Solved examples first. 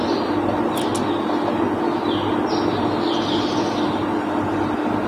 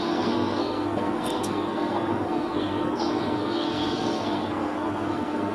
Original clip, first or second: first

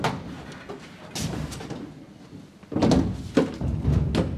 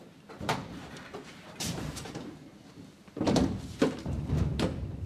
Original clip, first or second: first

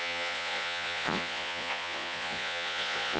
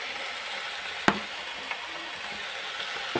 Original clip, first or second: second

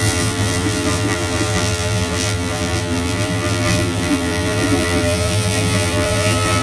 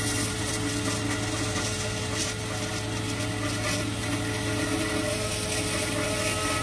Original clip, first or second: second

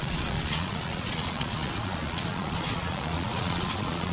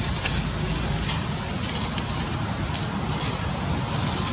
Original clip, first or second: second